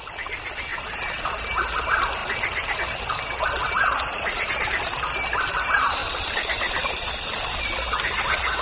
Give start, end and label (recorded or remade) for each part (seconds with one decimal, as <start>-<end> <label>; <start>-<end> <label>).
0.0-0.7 recorded; 0.7-1.3 remade; 1.3-6.0 recorded; 6.0-7.8 remade; 7.8-8.6 recorded